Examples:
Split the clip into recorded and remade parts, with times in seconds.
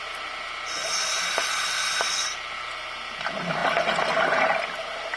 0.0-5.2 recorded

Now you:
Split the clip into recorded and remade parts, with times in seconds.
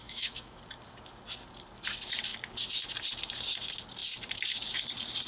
0.0-0.6 remade; 0.6-5.3 recorded